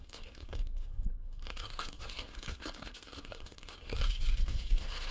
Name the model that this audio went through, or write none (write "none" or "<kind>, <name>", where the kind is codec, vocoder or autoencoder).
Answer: codec, SNAC